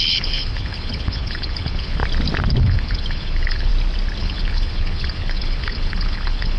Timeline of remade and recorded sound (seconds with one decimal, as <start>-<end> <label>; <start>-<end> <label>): 0.0-2.0 remade; 2.0-2.6 recorded; 2.6-3.7 remade; 3.7-4.2 recorded; 4.2-6.6 remade